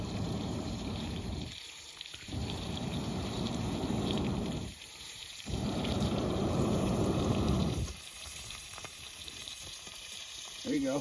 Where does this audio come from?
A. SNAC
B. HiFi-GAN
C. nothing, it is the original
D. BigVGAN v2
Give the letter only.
D